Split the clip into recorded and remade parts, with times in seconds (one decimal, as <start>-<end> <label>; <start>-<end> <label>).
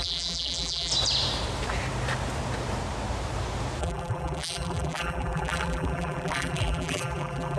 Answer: 0.0-0.9 remade; 0.9-3.8 recorded; 3.8-7.6 remade